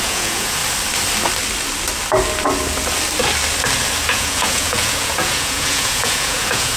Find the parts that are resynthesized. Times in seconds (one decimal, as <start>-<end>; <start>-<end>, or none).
0.0-0.6; 4.1-6.8